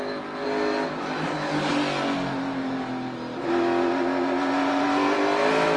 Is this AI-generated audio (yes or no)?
no